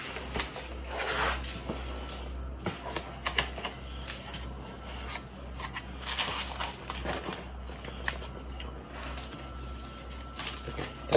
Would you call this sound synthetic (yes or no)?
no